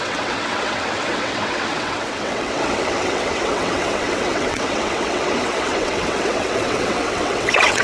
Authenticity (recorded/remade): remade